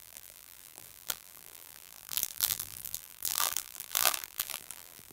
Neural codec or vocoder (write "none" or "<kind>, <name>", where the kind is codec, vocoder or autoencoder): vocoder, BigVGAN v2